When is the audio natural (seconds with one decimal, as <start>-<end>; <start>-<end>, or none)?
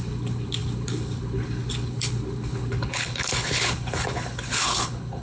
none